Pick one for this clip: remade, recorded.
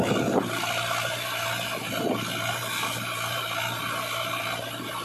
recorded